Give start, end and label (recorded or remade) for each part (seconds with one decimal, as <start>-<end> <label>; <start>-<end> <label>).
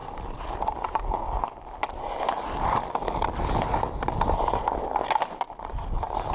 0.0-6.3 recorded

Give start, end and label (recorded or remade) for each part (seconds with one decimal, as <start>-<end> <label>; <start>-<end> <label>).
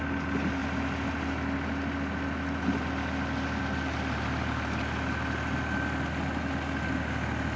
0.0-7.6 recorded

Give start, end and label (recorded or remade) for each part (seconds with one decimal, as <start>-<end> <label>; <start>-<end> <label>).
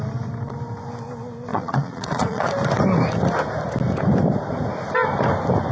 0.0-1.5 recorded; 1.5-2.5 remade; 2.5-5.7 recorded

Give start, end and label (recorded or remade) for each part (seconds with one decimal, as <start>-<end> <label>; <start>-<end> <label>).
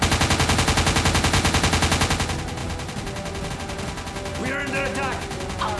0.0-5.8 recorded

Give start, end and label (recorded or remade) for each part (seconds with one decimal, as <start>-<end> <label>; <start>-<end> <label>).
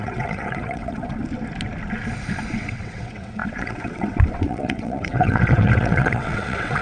0.0-1.2 remade; 1.2-2.5 recorded; 2.5-6.8 remade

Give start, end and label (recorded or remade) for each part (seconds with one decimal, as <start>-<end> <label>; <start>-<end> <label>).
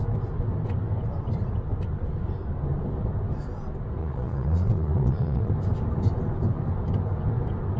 0.0-4.0 recorded; 4.0-5.5 remade; 5.5-7.8 recorded